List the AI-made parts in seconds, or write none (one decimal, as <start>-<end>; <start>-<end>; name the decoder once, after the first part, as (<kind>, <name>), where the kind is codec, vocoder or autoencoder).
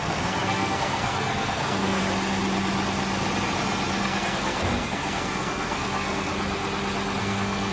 0.0-2.0 (codec, SNAC); 4.0-6.3; 7.2-7.7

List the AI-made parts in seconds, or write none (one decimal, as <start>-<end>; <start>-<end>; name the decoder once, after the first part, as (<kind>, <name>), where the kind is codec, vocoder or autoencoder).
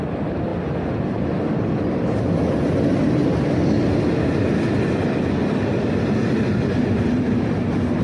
none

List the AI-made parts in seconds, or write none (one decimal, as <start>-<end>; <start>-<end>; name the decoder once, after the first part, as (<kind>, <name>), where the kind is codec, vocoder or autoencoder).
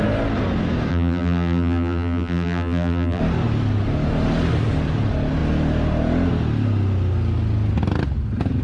0.9-3.2 (vocoder, BigVGAN v2)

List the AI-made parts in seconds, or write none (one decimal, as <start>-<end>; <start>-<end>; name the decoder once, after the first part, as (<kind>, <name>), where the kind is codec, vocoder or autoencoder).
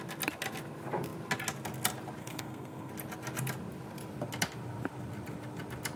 2.2-2.9 (codec, SNAC)